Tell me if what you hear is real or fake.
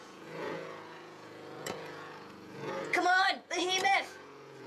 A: fake